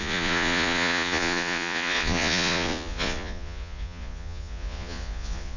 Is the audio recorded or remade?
remade